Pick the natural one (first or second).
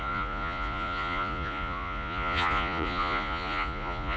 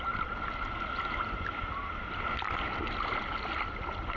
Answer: second